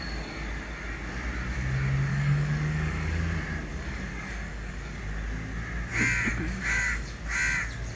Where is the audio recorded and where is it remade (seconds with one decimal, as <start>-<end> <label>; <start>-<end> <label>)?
0.0-2.1 recorded; 2.1-3.2 remade; 3.2-3.7 recorded; 3.7-5.0 remade; 5.0-6.3 recorded; 6.3-7.2 remade; 7.2-8.0 recorded